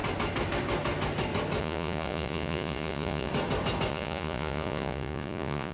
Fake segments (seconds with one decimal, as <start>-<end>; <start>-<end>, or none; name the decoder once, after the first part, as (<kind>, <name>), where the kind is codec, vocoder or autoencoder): 1.6-3.3 (vocoder, Vocos); 3.9-5.7